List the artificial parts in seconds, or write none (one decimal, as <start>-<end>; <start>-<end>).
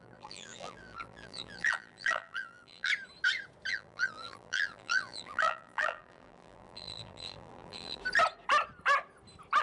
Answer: 0.0-2.9; 3.7-8.0